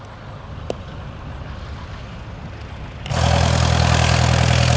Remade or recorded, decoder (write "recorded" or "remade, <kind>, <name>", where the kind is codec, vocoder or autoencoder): recorded